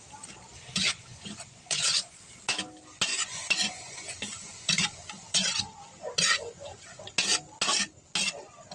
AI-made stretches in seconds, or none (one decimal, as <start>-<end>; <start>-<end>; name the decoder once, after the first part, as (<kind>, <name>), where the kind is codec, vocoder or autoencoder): 0.6-2.2 (vocoder, Vocos); 3.1-7.0